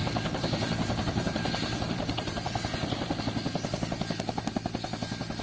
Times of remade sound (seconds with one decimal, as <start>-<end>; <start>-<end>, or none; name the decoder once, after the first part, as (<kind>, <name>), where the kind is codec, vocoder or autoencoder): 0.0-3.2 (vocoder, BigVGAN v2)